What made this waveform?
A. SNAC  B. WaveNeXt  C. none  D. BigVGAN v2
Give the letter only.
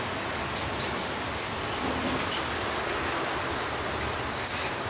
C